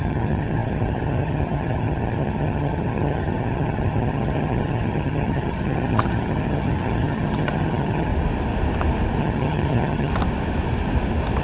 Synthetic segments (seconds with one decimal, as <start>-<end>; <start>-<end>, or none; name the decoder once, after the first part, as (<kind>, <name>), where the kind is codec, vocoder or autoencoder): 0.0-8.1 (vocoder, HiFi-GAN); 9.2-10.1